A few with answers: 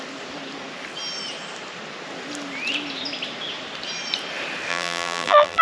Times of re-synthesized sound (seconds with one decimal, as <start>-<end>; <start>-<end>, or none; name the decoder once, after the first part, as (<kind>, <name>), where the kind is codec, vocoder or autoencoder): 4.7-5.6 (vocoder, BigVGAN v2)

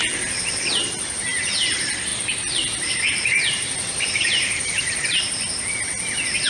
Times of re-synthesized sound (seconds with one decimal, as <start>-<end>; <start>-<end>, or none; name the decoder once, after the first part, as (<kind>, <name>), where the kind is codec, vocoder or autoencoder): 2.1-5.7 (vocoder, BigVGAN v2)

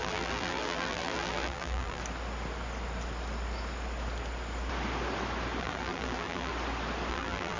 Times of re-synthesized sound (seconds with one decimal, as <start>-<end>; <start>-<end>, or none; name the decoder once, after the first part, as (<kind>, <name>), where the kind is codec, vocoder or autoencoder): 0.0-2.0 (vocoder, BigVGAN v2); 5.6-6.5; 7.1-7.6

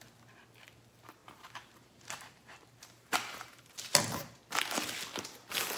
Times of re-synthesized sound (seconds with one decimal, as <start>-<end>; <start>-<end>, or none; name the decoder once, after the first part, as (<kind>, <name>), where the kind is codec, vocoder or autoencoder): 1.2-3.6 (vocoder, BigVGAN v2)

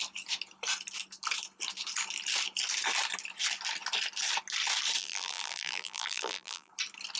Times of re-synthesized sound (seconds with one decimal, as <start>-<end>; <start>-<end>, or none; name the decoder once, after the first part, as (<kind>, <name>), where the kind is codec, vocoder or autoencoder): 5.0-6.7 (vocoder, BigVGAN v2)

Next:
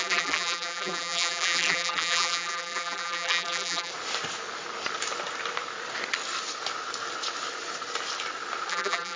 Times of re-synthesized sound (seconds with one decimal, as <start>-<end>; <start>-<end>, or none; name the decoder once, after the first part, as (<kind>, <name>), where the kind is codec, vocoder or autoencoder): 0.0-3.9 (vocoder, BigVGAN v2); 8.7-9.2

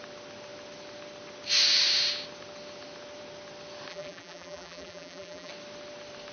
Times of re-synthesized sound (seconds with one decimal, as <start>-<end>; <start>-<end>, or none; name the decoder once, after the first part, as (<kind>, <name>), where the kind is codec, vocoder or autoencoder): 3.9-5.5 (vocoder, BigVGAN v2)

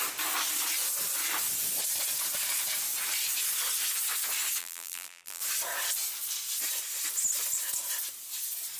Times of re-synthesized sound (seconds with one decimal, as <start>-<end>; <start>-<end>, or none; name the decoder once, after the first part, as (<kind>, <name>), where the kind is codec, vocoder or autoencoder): 4.6-5.4 (vocoder, BigVGAN v2)